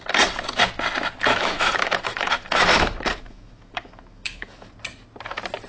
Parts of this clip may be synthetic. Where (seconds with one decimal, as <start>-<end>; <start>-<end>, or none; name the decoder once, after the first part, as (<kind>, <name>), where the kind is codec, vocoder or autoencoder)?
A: 1.3-4.7 (autoencoder, DAC-VAE)